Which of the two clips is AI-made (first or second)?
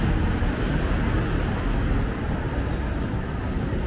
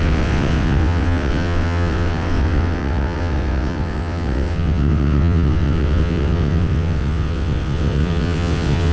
second